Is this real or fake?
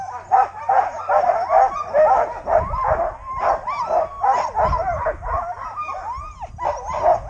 real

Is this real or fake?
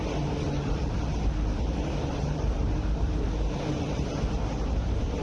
fake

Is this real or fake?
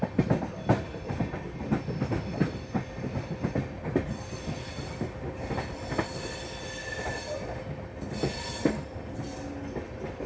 real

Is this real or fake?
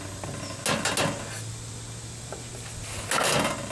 real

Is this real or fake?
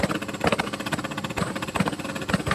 real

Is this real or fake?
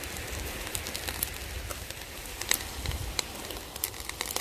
real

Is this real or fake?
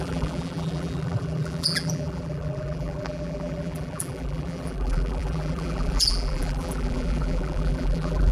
fake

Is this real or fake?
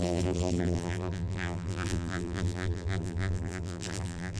fake